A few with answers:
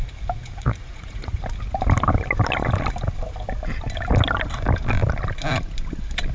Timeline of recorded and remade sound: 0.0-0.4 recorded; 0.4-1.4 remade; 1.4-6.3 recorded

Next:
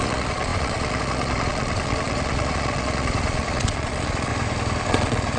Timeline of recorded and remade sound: 0.0-4.3 remade; 4.3-4.9 recorded; 4.9-5.4 remade